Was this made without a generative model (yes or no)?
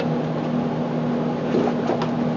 yes